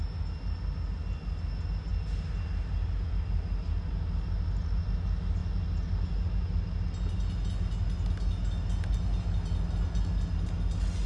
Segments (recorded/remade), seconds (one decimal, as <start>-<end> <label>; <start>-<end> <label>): 0.0-11.1 recorded